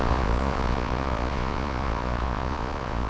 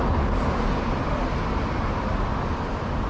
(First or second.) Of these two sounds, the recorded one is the second